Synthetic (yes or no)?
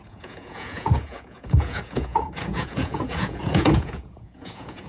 yes